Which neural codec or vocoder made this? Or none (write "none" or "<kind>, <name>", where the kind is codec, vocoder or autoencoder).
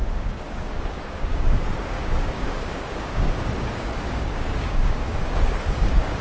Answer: codec, DAC